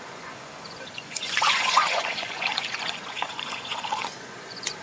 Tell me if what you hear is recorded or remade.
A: remade